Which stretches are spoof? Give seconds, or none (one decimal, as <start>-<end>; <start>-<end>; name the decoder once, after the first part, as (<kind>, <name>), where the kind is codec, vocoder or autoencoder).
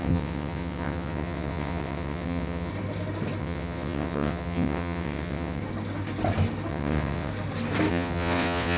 0.0-2.7 (vocoder, WaveNeXt); 3.4-5.6; 6.7-7.3; 7.9-8.8